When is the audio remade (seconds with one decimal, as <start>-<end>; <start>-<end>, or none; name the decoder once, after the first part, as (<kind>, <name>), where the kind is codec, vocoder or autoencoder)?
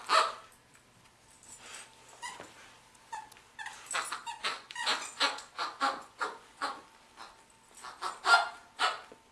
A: 4.5-6.8 (vocoder, Vocos)